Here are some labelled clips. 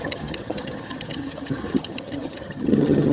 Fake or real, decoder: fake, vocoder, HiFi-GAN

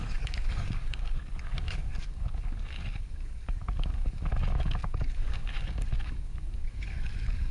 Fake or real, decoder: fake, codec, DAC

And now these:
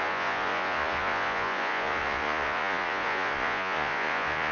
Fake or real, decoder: fake, vocoder, Vocos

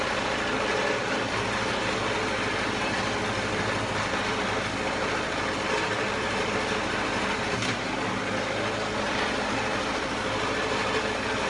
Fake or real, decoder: real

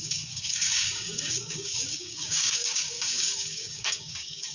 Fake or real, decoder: fake, codec, DAC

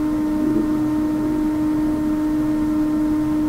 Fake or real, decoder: real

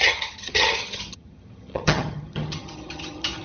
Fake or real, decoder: fake, vocoder, HiFi-GAN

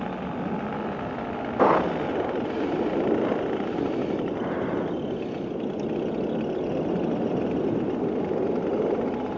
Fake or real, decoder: real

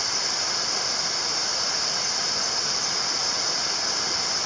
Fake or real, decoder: real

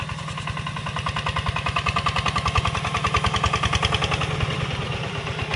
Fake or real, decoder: real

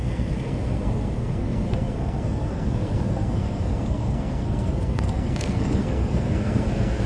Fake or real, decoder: fake, codec, SNAC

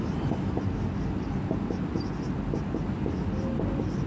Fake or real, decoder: real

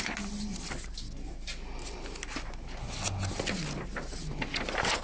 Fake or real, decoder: real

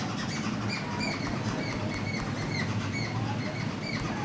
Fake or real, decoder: real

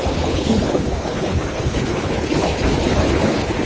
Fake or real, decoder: fake, codec, HILCodec